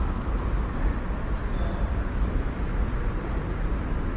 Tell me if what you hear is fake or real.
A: real